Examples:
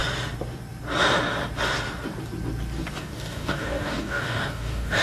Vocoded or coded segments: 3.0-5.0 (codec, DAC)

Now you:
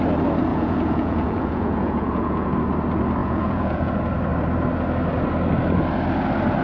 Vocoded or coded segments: 0.5-2.5 (vocoder, Vocos); 3.2-3.9

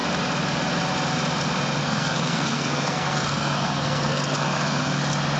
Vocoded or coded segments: 1.8-5.0 (codec, SNAC)

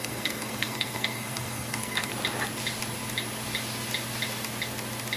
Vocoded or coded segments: 0.0-2.1 (codec, SNAC)

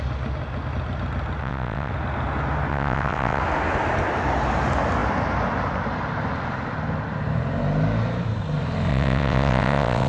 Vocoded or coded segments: 1.4-1.9 (vocoder, WaveNeXt); 2.7-3.4; 8.9-10.1

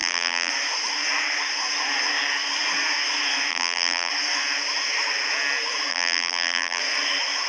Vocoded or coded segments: 0.0-0.5 (vocoder, BigVGAN v2); 3.5-4.1; 5.9-6.8

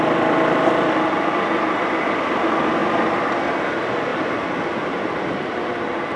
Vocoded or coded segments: 0.0-2.8 (vocoder, BigVGAN v2); 3.6-6.2